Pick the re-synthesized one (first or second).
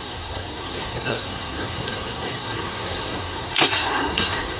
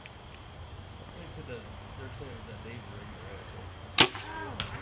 first